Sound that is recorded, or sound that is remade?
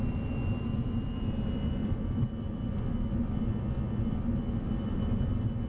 recorded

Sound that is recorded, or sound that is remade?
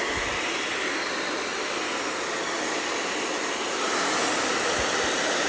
recorded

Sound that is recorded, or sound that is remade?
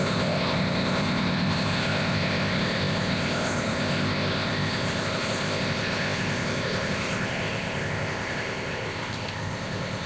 remade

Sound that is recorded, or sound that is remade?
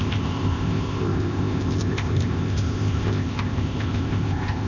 remade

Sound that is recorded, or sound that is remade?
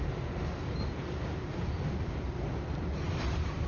recorded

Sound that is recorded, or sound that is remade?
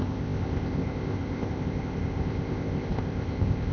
remade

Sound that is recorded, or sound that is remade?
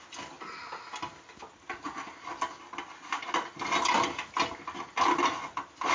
recorded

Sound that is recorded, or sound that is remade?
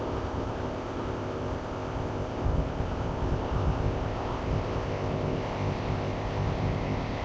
remade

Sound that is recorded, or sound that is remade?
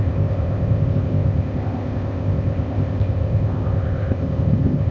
remade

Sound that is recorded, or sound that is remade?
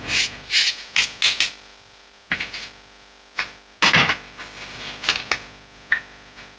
recorded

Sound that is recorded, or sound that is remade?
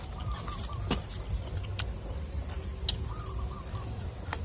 recorded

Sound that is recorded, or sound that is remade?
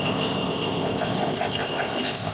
remade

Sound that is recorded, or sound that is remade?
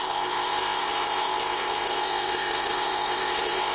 remade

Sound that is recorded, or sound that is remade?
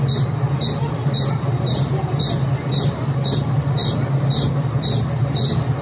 recorded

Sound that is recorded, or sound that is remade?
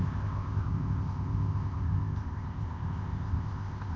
remade